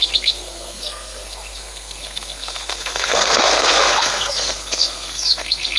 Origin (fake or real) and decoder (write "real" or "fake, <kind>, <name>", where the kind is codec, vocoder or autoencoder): fake, codec, SNAC